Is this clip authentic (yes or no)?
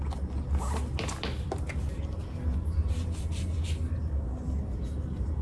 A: yes